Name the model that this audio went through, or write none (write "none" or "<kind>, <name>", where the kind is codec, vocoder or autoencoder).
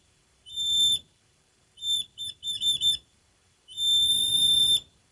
vocoder, BigVGAN v2